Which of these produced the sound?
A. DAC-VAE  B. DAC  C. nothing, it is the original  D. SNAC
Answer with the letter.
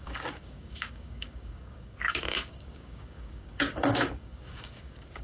B